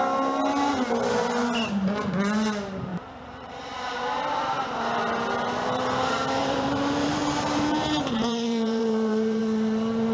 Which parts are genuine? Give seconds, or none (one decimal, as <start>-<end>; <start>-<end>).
0.0-2.9; 3.6-6.4; 9.4-10.1

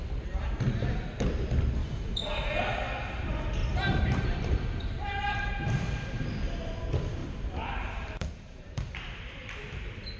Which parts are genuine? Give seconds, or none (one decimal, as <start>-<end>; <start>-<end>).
0.0-1.8; 2.7-3.6; 5.5-7.2

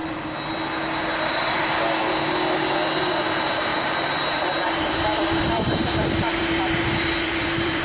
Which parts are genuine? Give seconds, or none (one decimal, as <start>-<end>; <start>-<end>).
0.0-3.0

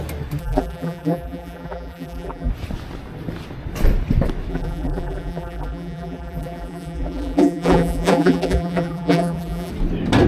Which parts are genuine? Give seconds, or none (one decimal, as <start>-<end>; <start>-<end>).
0.0-0.4; 2.5-4.5; 9.7-10.3

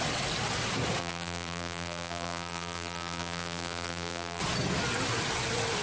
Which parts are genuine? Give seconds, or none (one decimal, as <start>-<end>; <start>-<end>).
0.0-1.0; 4.4-5.8

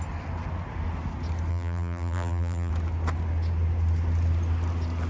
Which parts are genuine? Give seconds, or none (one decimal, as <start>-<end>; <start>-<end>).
0.0-1.5; 2.7-5.1

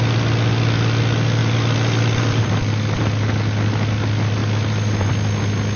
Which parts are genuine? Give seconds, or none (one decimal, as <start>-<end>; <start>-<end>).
0.0-1.4; 3.0-4.4; 5.1-5.8

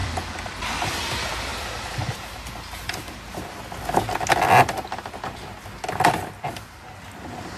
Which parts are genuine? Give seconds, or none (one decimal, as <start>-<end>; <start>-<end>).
0.6-7.6